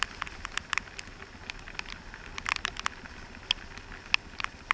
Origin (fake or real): real